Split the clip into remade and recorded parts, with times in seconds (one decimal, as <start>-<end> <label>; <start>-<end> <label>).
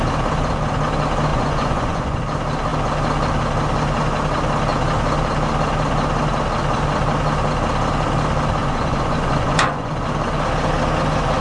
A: 0.0-1.3 recorded; 1.3-2.2 remade; 2.2-8.6 recorded; 8.6-9.9 remade; 9.9-11.4 recorded